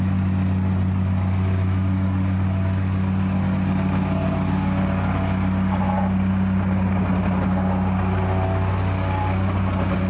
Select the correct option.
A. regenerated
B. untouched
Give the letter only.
B